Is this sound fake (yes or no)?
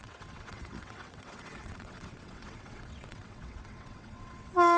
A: yes